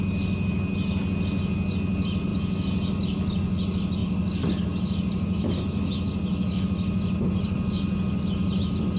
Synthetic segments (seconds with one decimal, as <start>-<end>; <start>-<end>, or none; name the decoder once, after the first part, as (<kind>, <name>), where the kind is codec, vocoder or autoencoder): none